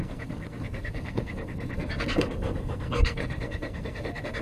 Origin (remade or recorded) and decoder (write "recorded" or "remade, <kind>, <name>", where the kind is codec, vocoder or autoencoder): remade, codec, SNAC